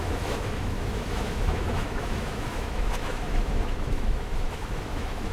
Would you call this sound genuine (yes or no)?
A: no